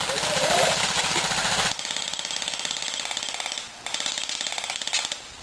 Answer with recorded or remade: recorded